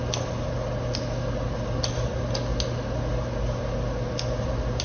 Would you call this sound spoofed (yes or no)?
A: no